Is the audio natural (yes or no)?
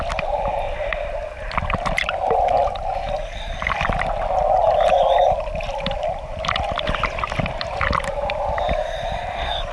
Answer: no